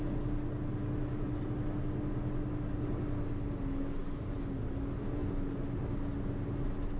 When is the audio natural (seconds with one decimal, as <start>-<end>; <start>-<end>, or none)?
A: 0.0-7.0